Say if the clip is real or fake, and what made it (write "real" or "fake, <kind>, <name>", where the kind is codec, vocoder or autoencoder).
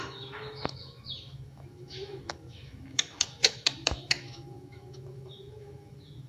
fake, autoencoder, DAC-VAE